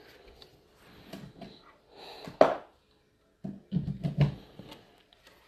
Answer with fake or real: real